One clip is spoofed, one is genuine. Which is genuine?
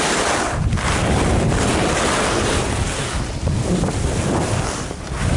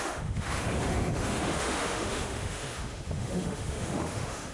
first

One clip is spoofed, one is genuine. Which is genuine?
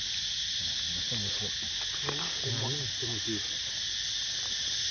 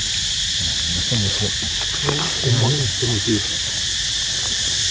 first